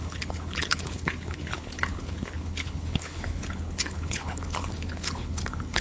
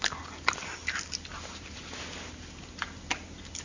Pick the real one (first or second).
second